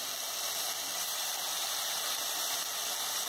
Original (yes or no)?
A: yes